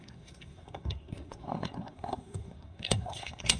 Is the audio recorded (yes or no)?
no